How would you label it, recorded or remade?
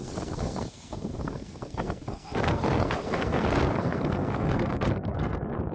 remade